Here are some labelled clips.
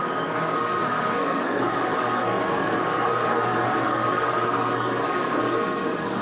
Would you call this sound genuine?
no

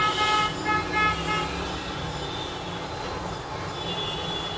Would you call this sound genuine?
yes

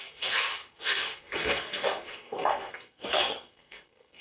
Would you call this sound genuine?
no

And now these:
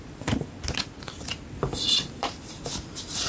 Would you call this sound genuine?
yes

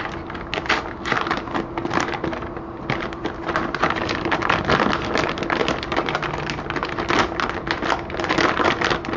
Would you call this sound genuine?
yes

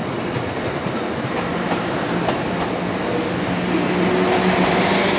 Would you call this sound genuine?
yes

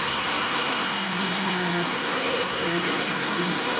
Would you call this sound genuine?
no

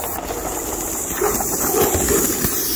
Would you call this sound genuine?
yes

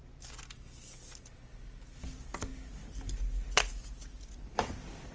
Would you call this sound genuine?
yes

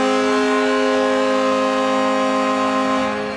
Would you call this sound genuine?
yes